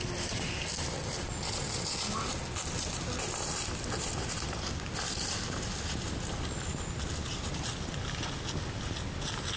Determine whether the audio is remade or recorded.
recorded